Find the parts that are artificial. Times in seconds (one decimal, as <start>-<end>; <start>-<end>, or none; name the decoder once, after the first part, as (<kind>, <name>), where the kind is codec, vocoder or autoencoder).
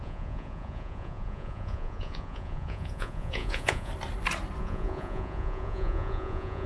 0.0-3.9 (vocoder, Vocos); 4.6-6.7